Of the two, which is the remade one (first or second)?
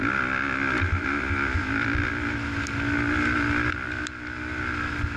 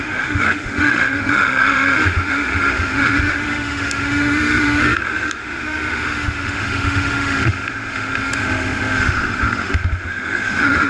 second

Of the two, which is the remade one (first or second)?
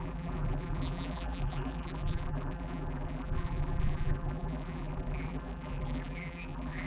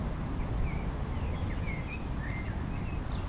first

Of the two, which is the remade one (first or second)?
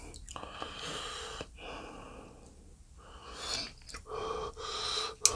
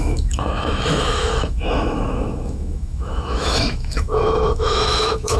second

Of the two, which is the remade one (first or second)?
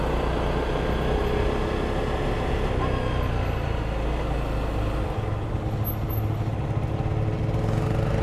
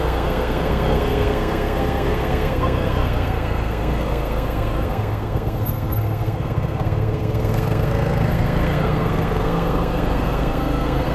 second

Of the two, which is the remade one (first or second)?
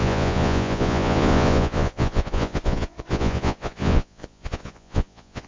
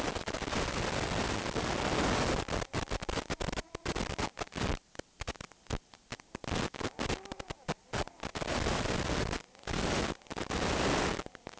first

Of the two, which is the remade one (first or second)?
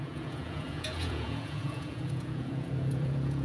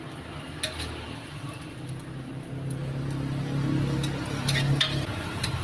first